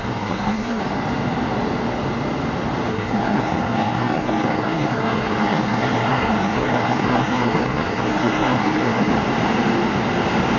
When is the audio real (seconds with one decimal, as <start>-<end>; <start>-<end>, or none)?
0.8-2.9; 9.1-10.6